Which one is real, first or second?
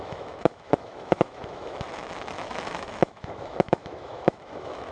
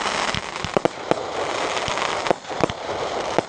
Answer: second